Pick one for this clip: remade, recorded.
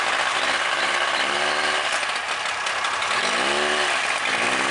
recorded